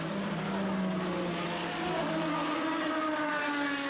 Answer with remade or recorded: recorded